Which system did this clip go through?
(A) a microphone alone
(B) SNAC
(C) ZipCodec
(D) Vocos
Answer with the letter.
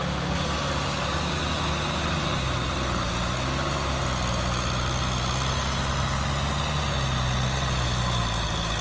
A